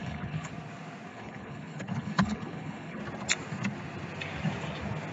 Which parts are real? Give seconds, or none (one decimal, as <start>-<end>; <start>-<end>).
0.5-1.1; 3.0-5.1